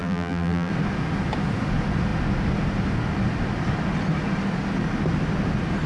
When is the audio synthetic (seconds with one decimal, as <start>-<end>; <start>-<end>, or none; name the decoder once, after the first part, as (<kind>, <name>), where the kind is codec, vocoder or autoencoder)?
0.0-0.7 (vocoder, BigVGAN v2)